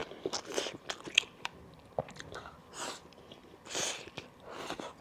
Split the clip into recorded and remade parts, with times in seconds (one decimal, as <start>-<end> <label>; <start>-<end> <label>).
0.0-3.0 remade; 3.0-3.4 recorded; 3.4-4.4 remade; 4.4-5.0 recorded